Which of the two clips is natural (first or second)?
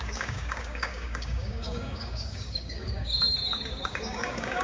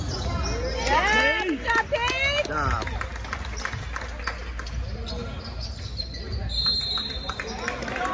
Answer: second